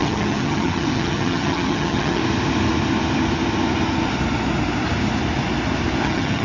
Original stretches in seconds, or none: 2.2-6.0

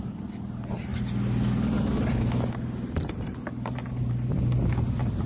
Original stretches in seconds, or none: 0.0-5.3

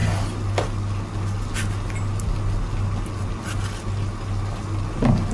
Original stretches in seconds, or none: 0.0-5.3